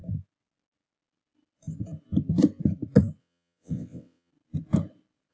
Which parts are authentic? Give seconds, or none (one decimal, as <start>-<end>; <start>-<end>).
0.0-3.2; 4.3-5.3